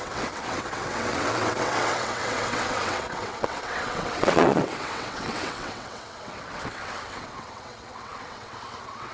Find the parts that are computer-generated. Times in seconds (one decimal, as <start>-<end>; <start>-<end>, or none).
0.0-9.1